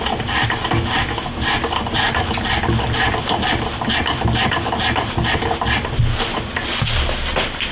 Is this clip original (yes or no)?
yes